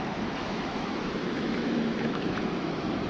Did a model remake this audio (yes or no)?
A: yes